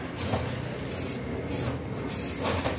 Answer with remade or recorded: recorded